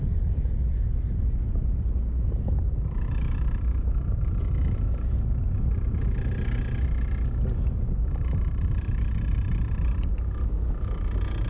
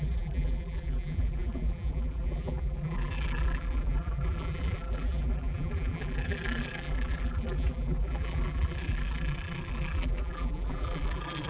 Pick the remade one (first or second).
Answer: second